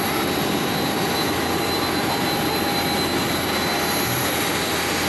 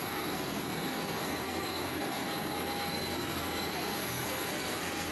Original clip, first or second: first